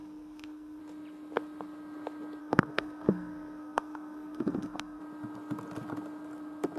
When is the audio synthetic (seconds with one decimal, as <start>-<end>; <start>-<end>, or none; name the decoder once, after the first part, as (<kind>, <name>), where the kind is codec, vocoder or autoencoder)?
0.0-0.8 (codec, SNAC); 2.4-5.0